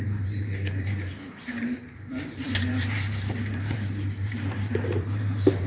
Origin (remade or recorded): remade